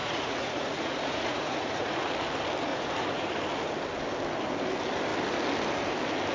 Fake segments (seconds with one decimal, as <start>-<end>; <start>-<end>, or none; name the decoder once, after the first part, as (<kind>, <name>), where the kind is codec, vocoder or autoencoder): 0.0-2.1 (vocoder, Vocos); 2.7-3.3